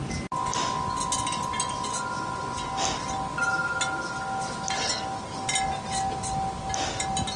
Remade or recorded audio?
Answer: recorded